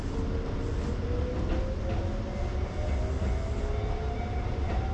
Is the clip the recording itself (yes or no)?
yes